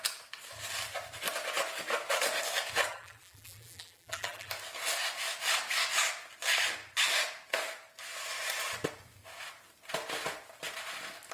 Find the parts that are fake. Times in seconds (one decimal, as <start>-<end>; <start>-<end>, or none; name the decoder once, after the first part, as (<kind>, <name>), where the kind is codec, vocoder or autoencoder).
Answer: 2.9-4.5 (vocoder, BigVGAN v2)